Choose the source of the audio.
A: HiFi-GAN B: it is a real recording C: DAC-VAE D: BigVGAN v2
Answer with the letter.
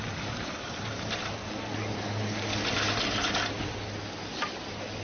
B